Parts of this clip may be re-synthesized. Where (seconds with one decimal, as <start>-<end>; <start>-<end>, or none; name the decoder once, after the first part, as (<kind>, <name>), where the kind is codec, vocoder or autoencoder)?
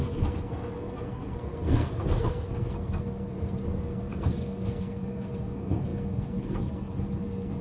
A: 0.0-7.6 (codec, SNAC)